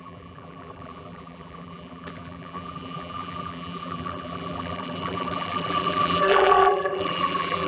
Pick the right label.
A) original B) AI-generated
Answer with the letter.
B